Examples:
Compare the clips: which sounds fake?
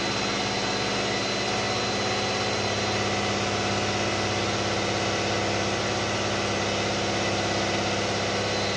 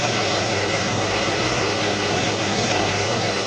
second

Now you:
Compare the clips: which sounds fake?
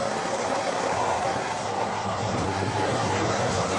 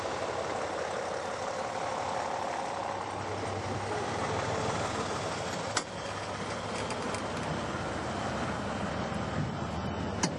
first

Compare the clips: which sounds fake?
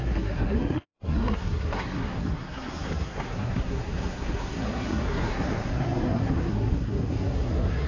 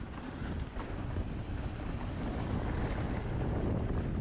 first